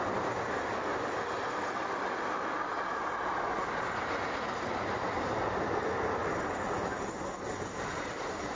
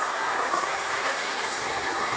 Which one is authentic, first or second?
first